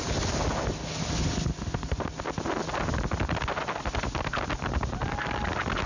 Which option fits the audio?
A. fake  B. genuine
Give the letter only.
B